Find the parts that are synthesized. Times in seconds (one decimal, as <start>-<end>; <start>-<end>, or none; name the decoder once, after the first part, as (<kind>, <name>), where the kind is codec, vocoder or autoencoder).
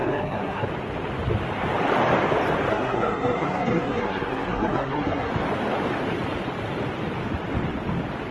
0.0-0.7 (codec, SNAC); 2.7-5.3